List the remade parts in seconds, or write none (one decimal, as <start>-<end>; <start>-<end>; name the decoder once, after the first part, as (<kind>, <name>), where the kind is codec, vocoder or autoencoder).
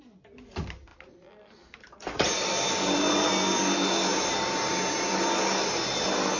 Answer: 0.9-3.1 (vocoder, BigVGAN v2)